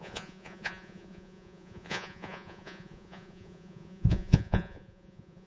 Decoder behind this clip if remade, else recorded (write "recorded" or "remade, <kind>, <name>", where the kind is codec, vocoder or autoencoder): remade, vocoder, Vocos